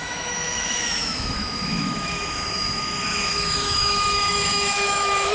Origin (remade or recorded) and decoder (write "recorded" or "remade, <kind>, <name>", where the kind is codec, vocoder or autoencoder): remade, autoencoder, DAC-VAE